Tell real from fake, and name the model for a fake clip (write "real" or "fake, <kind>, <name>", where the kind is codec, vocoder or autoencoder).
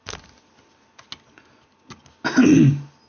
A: real